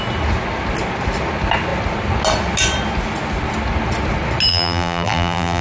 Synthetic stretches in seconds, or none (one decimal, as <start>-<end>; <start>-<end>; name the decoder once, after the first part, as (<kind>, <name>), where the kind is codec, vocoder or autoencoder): 4.5-5.6 (vocoder, BigVGAN v2)